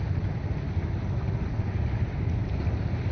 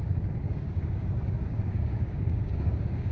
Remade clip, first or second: second